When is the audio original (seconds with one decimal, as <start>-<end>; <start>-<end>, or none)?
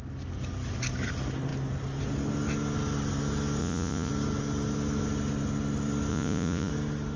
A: 0.0-3.6; 4.1-6.1; 6.7-7.2